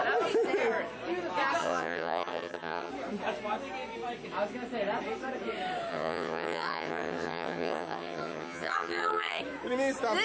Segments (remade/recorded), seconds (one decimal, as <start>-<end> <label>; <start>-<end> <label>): 0.0-1.6 recorded; 1.6-2.9 remade; 2.9-5.9 recorded; 5.9-9.4 remade; 9.4-10.2 recorded